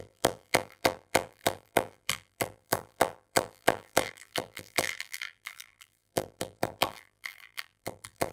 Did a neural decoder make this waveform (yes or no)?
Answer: yes